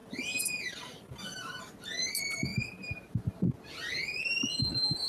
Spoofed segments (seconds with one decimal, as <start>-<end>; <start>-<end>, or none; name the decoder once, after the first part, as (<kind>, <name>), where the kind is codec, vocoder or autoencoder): 0.0-1.6 (vocoder, BigVGAN v2); 2.5-3.5